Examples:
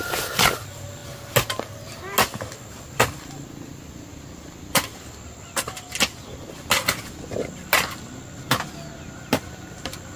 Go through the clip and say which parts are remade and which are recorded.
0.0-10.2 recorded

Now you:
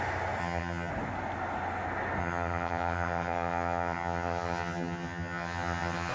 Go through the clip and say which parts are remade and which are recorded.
0.0-0.4 recorded; 0.4-0.9 remade; 0.9-2.2 recorded; 2.2-6.1 remade

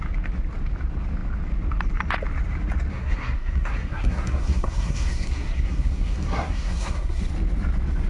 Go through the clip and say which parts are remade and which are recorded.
0.0-2.9 recorded; 2.9-7.2 remade; 7.2-8.1 recorded

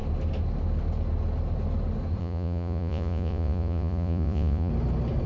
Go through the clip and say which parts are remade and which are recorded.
0.0-2.2 recorded; 2.2-4.7 remade; 4.7-5.3 recorded

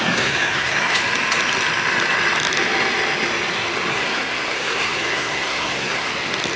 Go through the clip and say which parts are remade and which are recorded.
0.0-1.0 remade; 1.0-3.9 recorded; 3.9-6.1 remade; 6.1-6.6 recorded

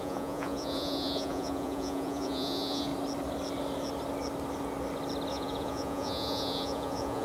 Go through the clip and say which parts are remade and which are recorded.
0.0-2.9 remade; 2.9-5.3 recorded; 5.3-7.2 remade

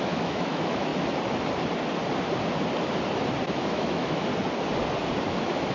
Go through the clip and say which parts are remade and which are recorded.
0.0-0.9 remade; 0.9-3.5 recorded; 3.5-4.3 remade; 4.3-5.3 recorded; 5.3-5.7 remade